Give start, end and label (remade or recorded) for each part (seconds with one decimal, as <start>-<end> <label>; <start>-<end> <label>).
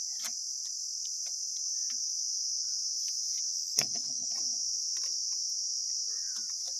0.0-3.5 recorded; 3.5-4.3 remade; 4.3-6.8 recorded